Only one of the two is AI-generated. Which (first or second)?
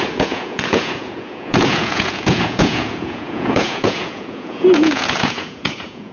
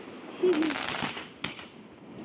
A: first